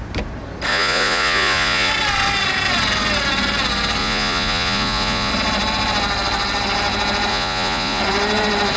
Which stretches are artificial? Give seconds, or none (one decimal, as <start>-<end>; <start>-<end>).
0.7-1.9; 4.0-5.3; 7.3-8.0